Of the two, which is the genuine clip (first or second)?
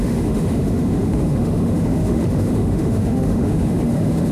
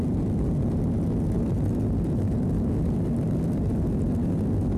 second